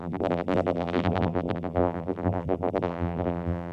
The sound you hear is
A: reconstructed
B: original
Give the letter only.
A